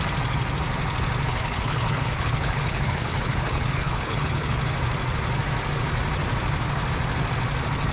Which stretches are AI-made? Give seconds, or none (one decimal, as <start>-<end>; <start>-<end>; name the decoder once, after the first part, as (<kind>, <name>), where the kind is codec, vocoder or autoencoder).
1.3-4.6 (codec, HILCodec)